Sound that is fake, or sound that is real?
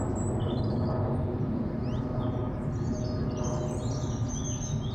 real